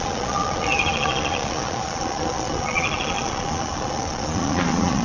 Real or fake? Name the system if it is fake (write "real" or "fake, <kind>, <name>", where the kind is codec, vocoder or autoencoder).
fake, vocoder, Vocos